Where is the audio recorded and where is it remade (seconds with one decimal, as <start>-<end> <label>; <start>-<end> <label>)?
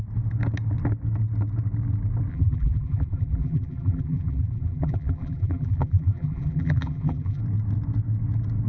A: 0.0-2.3 recorded; 2.3-7.4 remade; 7.4-8.7 recorded